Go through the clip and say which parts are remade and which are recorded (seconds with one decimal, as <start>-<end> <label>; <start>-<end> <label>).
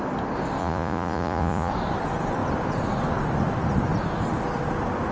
0.0-0.6 recorded; 0.6-1.7 remade; 1.7-5.1 recorded